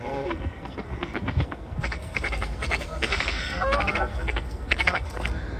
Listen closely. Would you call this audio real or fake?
fake